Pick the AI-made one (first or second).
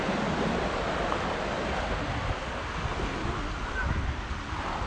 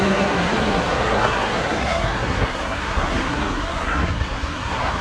second